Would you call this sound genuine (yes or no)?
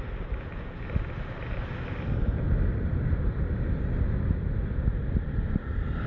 yes